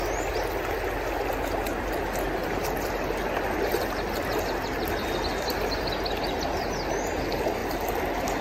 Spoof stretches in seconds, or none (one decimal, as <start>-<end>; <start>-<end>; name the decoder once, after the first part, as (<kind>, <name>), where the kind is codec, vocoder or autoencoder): none